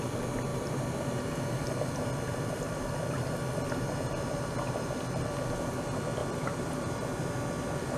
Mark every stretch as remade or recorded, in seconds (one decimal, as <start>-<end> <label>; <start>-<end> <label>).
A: 0.0-0.5 recorded; 0.5-5.3 remade; 5.3-6.2 recorded; 6.2-8.0 remade